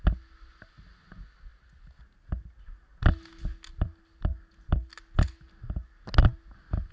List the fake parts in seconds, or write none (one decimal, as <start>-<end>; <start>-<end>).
none